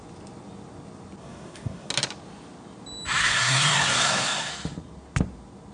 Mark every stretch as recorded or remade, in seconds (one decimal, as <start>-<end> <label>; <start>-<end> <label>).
0.0-1.2 recorded; 1.2-1.9 remade; 1.9-3.2 recorded; 3.2-4.5 remade; 4.5-5.7 recorded

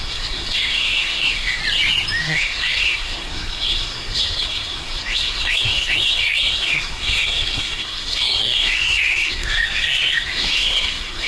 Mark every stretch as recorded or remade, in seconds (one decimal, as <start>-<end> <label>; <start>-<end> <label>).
0.0-1.6 remade; 1.6-2.2 recorded; 2.2-11.3 remade

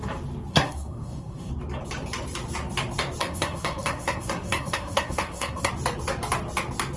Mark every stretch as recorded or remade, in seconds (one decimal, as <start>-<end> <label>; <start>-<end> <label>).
0.0-0.5 recorded; 0.5-1.5 remade; 1.5-3.2 recorded; 3.2-5.7 remade; 5.7-7.0 recorded

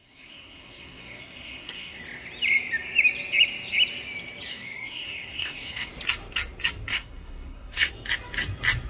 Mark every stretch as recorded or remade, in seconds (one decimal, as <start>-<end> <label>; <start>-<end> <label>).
0.0-2.0 remade; 2.0-4.5 recorded; 4.5-5.9 remade; 5.9-6.9 recorded; 6.9-7.9 remade; 7.9-8.9 recorded

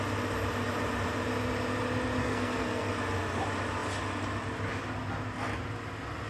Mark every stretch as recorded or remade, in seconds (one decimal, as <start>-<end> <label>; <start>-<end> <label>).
0.0-2.2 recorded; 2.2-2.9 remade; 2.9-6.3 recorded

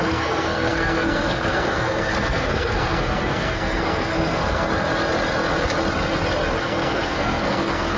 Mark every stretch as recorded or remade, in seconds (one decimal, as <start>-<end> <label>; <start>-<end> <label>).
0.0-4.7 remade; 4.7-6.6 recorded; 6.6-8.0 remade

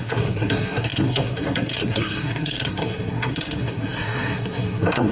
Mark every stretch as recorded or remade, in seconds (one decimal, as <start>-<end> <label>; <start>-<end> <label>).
0.0-5.1 remade

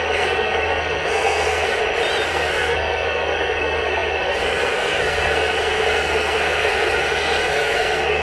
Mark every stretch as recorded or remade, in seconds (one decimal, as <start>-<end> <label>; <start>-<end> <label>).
0.0-1.8 remade; 1.8-2.3 recorded; 2.3-8.2 remade